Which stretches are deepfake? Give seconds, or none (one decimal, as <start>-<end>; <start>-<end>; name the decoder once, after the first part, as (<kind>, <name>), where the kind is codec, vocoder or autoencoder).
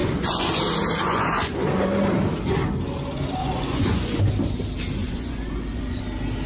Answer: 0.0-0.6 (vocoder, Vocos); 1.0-1.9; 3.4-4.2; 5.0-6.0